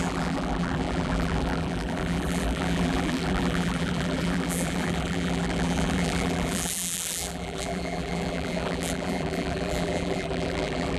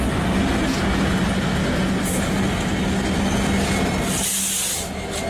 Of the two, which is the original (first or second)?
second